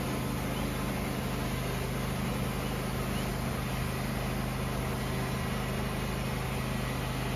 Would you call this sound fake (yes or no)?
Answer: no